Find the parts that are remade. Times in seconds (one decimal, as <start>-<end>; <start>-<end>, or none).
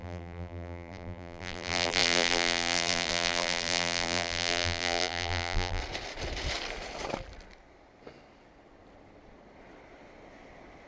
0.0-5.8